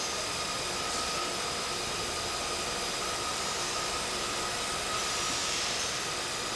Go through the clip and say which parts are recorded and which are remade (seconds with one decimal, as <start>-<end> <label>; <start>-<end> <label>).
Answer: 0.0-3.3 recorded; 3.3-4.7 remade; 4.7-5.4 recorded; 5.4-6.1 remade; 6.1-6.6 recorded